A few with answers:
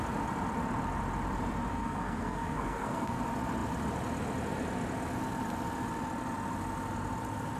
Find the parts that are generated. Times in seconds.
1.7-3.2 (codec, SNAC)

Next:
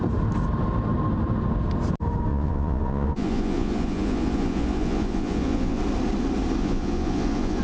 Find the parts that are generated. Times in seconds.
2.3-5.8 (vocoder, Vocos); 6.6-7.6

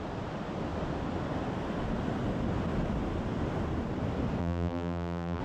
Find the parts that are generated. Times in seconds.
4.4-5.4 (vocoder, BigVGAN v2)

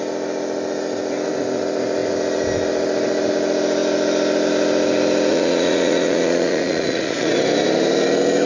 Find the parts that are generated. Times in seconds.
5.3-7.3 (vocoder, Vocos)

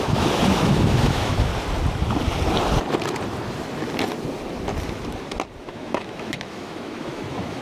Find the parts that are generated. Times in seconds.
0.0-1.5 (autoencoder, DAC-VAE); 5.6-7.6

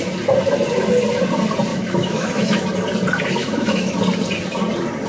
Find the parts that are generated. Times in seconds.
1.7-2.6 (autoencoder, DAC-VAE); 3.4-4.0

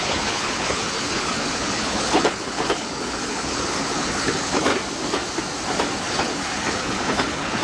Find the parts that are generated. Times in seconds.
0.0-4.7 (codec, HILCodec); 6.0-7.6